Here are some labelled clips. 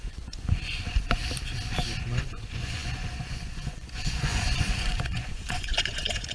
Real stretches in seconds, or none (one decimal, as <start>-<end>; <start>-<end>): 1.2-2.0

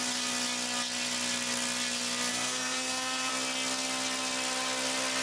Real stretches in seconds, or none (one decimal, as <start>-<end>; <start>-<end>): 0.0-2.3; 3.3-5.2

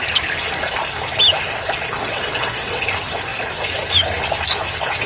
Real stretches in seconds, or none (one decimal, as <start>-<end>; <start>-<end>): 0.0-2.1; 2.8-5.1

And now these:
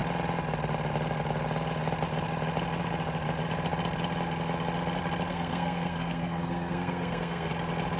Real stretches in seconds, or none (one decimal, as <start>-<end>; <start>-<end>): 0.0-5.3; 7.5-8.0